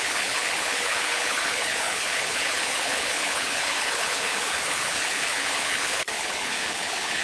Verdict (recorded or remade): remade